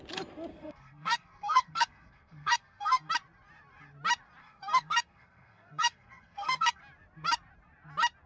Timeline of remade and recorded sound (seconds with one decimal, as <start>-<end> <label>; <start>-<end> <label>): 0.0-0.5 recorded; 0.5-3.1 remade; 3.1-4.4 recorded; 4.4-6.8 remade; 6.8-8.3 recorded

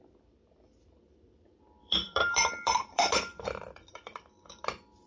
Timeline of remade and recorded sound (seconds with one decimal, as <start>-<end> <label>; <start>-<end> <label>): 0.0-1.8 recorded; 1.8-5.1 remade

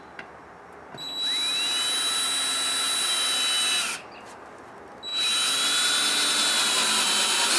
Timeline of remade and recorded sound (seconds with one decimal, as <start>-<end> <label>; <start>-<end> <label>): 0.0-7.6 recorded